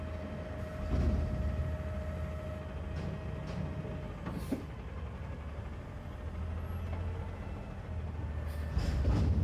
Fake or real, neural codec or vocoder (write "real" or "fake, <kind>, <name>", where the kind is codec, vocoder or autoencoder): real